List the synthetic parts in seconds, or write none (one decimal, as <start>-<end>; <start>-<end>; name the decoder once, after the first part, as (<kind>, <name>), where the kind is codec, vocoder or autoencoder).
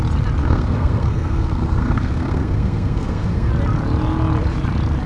0.4-3.5 (codec, SNAC)